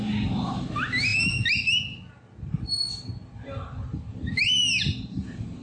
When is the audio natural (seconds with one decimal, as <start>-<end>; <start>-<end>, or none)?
0.0-5.6